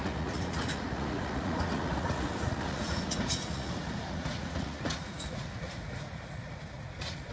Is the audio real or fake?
fake